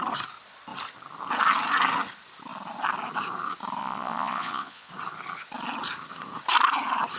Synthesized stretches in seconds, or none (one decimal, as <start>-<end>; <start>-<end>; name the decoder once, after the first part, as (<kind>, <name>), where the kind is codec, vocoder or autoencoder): 3.8-4.9 (vocoder, Vocos)